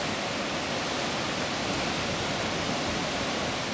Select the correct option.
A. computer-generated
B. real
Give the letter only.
B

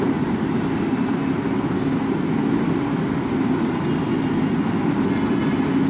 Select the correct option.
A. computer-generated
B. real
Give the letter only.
B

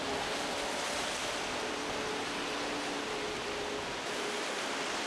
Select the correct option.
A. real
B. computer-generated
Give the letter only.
A